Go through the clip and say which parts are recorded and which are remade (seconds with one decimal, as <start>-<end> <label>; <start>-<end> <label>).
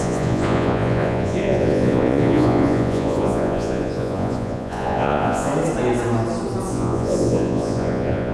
0.0-5.5 remade; 5.5-6.7 recorded; 6.7-8.3 remade